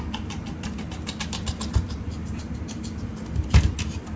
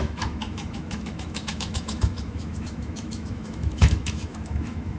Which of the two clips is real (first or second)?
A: first